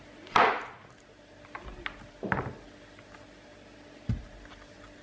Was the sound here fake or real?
real